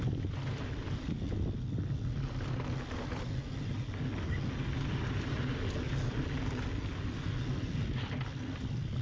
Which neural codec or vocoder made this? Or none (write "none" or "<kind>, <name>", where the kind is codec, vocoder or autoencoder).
none